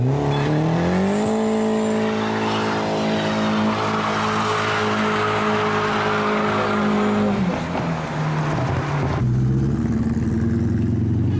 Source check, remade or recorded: recorded